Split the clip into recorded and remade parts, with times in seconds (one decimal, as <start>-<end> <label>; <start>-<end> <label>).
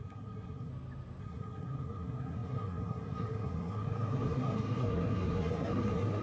0.0-0.7 remade; 0.7-1.2 recorded; 1.2-6.2 remade